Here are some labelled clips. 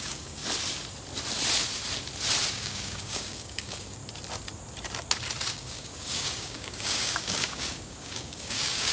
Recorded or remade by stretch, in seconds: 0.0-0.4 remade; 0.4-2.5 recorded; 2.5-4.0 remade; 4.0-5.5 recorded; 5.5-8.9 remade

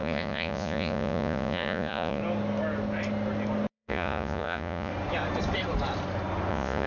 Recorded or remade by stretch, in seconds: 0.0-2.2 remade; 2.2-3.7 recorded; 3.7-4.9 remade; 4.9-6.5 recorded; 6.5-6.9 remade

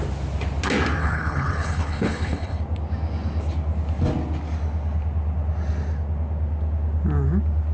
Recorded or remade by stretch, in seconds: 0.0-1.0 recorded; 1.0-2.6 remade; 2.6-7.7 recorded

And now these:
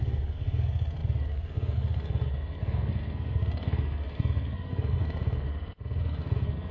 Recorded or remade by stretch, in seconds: 0.0-5.5 remade; 5.5-6.0 recorded; 6.0-6.7 remade

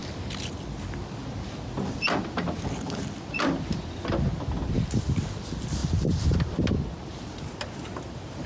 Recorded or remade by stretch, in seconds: 0.0-8.5 recorded

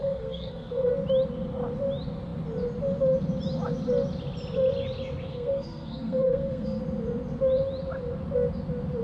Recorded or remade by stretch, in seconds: 0.0-0.9 remade; 0.9-5.3 recorded; 5.3-6.8 remade; 6.8-9.0 recorded